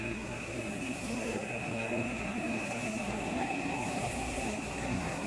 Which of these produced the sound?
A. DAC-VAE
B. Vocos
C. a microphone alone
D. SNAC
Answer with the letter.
D